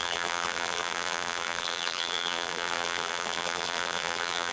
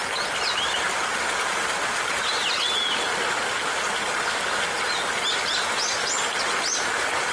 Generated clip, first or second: first